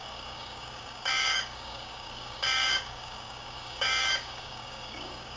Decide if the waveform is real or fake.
fake